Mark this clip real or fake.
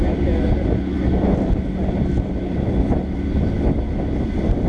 real